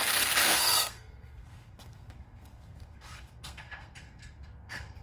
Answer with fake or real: fake